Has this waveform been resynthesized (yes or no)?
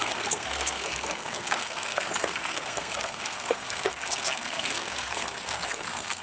yes